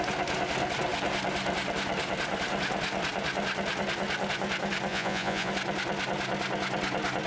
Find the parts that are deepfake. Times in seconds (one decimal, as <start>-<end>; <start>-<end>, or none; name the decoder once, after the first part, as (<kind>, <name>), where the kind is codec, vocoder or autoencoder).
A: 4.9-5.5 (vocoder, Vocos)